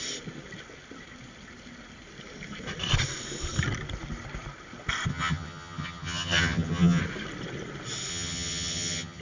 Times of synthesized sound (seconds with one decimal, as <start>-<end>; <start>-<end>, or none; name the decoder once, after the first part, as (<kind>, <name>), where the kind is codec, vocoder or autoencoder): 5.1-7.0 (vocoder, HiFi-GAN); 8.1-9.2